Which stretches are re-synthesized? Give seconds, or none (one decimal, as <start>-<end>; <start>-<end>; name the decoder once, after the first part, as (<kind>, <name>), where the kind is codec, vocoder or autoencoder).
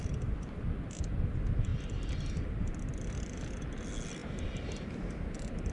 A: none